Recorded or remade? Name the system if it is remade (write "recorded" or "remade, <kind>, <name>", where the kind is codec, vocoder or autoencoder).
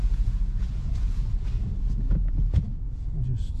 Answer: remade, vocoder, Vocos